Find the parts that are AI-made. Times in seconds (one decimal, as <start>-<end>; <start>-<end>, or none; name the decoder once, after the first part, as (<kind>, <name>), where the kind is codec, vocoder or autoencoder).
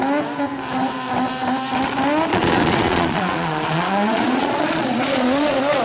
2.3-5.8 (vocoder, Vocos)